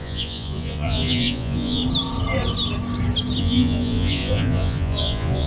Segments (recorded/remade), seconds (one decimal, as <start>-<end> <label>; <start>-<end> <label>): 0.0-1.8 remade; 1.8-3.4 recorded; 3.4-5.5 remade